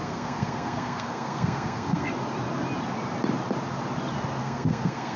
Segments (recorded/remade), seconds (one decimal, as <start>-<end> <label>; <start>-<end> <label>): 0.0-2.1 remade; 2.1-4.4 recorded; 4.4-5.2 remade